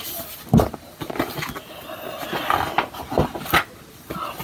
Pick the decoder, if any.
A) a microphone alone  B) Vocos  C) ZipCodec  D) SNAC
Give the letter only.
A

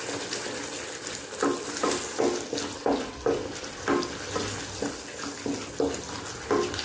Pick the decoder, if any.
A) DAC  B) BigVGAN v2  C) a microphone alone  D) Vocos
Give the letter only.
C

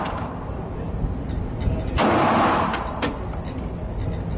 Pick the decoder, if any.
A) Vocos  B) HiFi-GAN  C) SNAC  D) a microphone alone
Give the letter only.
D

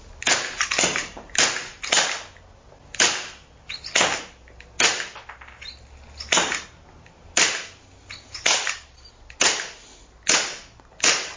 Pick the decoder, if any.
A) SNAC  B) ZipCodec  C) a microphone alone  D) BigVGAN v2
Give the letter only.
C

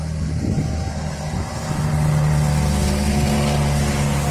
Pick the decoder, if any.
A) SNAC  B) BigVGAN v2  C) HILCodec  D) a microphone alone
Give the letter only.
D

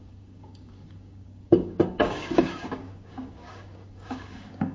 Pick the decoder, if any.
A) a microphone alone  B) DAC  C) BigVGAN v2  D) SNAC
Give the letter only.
B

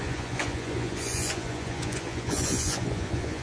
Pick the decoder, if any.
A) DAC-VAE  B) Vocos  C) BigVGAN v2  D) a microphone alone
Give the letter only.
B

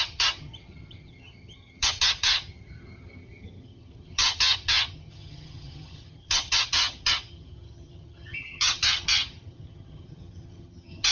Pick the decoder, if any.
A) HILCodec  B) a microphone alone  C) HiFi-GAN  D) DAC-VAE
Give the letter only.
C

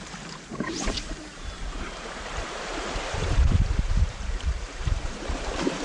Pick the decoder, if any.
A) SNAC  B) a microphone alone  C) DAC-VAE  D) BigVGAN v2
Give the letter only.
D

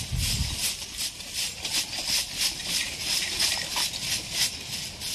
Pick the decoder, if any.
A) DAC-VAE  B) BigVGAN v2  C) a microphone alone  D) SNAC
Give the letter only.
C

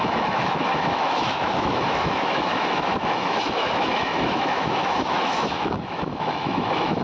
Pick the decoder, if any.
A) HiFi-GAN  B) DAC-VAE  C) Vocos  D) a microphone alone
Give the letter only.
B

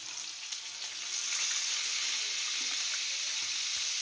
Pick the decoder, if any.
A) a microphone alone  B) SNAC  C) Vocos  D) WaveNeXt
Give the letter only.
A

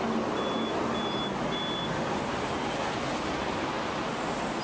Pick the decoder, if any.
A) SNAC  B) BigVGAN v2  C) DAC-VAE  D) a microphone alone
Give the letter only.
D